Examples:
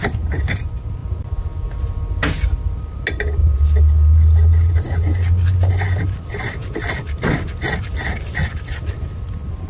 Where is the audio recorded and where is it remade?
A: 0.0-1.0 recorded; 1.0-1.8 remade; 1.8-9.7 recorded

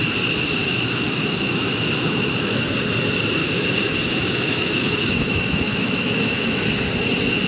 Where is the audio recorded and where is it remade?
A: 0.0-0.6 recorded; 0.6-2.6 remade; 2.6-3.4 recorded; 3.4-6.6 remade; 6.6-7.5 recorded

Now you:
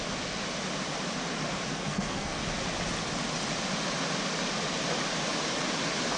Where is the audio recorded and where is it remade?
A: 0.0-1.7 recorded; 1.7-2.4 remade; 2.4-6.2 recorded

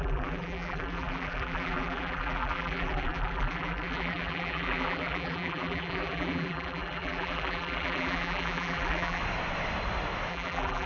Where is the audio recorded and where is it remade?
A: 0.0-9.2 remade; 9.2-10.3 recorded; 10.3-10.9 remade